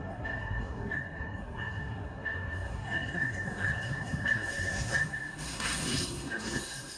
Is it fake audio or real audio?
fake